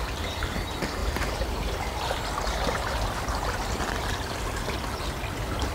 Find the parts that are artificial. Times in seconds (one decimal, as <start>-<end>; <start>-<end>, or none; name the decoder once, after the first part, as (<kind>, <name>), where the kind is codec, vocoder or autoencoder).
1.0-4.4 (vocoder, BigVGAN v2)